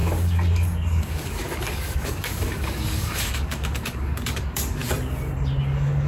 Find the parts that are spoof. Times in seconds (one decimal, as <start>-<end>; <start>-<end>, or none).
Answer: 0.0-4.8; 5.6-6.1

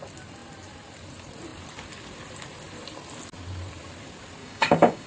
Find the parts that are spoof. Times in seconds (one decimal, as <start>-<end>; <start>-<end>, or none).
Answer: 4.4-5.1

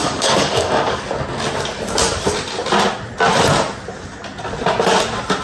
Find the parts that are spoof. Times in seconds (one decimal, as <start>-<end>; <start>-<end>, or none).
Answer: 0.0-1.0

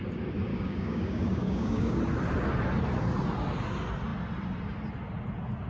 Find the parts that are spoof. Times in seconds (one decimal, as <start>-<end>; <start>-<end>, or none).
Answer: 0.5-2.0

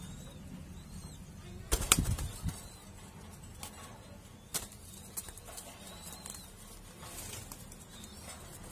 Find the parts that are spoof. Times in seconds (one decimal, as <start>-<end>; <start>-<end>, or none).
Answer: none

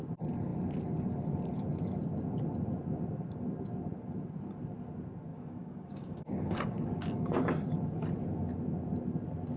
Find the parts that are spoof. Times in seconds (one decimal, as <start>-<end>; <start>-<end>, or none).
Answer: 5.3-7.3